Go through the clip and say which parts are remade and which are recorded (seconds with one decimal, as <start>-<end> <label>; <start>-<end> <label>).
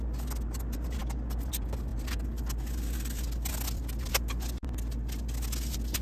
0.0-6.0 recorded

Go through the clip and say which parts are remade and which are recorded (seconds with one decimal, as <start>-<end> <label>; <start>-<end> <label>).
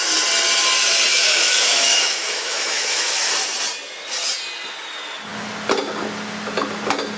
0.0-1.1 recorded; 1.1-3.3 remade; 3.3-7.2 recorded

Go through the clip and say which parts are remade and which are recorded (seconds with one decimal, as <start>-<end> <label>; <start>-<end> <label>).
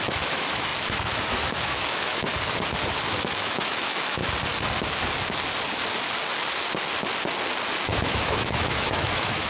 0.0-2.3 remade; 2.3-2.9 recorded; 2.9-4.2 remade; 4.2-7.8 recorded; 7.8-9.5 remade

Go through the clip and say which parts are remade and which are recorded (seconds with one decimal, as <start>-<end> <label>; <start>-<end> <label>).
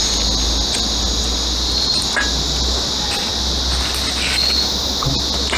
0.0-5.6 recorded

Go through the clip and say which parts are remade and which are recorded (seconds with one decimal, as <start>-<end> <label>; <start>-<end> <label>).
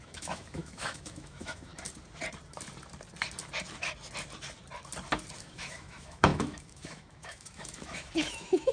0.0-1.7 remade; 1.7-5.4 recorded; 5.4-8.7 remade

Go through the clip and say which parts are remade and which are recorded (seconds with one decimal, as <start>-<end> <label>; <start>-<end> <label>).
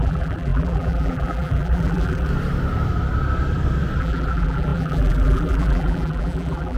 0.0-2.3 remade; 2.3-4.0 recorded; 4.0-6.8 remade